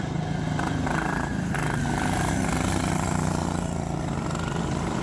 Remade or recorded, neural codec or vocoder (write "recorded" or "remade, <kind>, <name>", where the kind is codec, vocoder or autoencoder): recorded